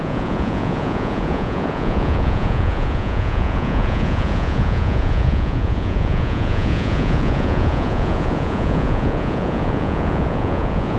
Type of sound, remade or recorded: remade